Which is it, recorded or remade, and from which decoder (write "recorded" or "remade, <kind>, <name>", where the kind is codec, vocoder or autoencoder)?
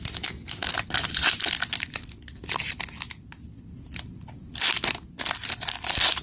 recorded